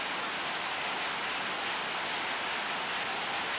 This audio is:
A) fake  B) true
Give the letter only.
B